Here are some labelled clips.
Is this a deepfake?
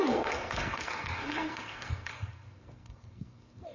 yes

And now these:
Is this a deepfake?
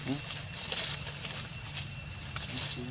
no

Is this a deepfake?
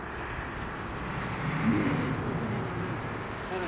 no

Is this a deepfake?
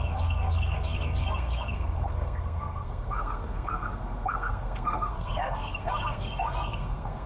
yes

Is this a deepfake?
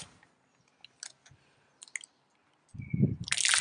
no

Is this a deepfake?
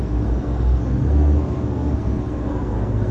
yes